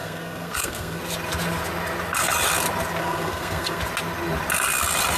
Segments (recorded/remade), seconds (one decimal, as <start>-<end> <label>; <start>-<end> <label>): 0.0-1.0 remade; 1.0-3.0 recorded; 3.0-3.8 remade; 3.8-5.2 recorded